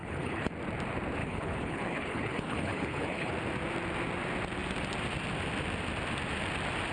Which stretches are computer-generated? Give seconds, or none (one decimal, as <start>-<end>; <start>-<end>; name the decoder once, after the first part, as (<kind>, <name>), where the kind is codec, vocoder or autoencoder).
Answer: 0.0-0.5 (codec, HILCodec); 1.2-3.3